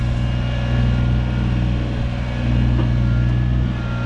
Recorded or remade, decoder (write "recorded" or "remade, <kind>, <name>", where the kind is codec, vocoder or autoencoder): recorded